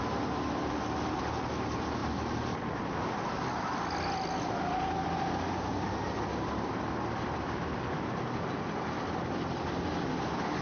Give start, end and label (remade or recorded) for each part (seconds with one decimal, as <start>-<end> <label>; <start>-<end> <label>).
0.0-10.6 recorded